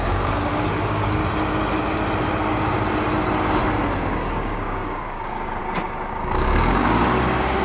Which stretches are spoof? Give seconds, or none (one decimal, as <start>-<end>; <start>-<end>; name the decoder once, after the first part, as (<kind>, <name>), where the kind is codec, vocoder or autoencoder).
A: 0.0-1.2 (codec, DAC); 4.0-5.6; 6.1-7.6